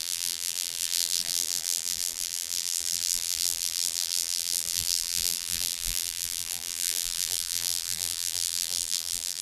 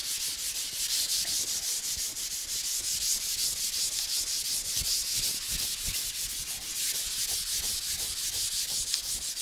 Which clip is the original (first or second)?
second